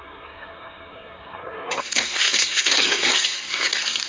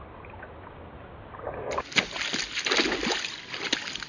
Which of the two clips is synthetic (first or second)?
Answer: first